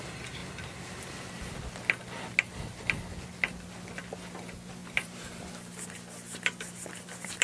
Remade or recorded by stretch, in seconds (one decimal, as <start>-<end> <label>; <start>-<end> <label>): 0.0-4.8 recorded; 4.8-5.5 remade; 5.5-7.4 recorded